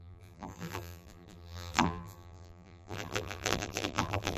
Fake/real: fake